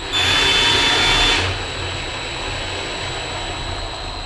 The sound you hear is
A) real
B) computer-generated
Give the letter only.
A